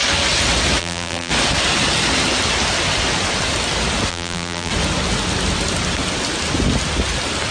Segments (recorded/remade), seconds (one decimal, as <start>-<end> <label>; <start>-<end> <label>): 0.0-0.8 recorded; 0.8-1.3 remade; 1.3-4.1 recorded; 4.1-4.7 remade; 4.7-7.5 recorded